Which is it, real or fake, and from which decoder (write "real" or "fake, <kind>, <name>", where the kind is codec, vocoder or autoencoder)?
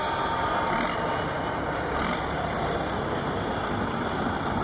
real